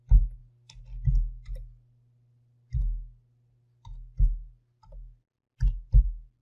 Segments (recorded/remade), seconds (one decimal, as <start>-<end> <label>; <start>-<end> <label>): 0.0-6.4 recorded